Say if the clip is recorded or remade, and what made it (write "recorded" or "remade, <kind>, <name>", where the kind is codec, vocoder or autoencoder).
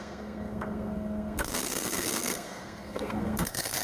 remade, codec, SNAC